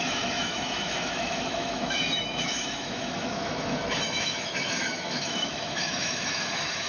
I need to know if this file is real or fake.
fake